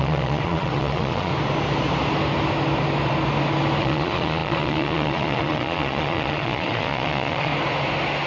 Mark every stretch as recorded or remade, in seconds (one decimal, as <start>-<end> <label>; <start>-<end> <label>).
0.0-1.3 remade; 1.3-3.8 recorded; 3.8-7.5 remade; 7.5-8.3 recorded